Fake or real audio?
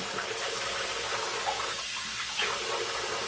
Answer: real